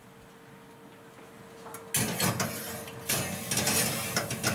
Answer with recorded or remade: recorded